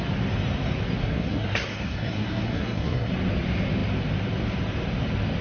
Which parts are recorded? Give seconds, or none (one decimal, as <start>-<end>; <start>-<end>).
0.0-1.0; 3.1-5.4